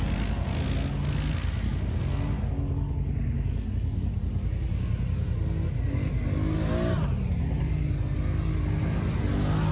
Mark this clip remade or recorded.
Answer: recorded